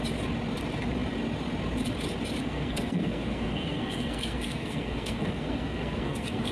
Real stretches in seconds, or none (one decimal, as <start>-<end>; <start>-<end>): 0.0-2.4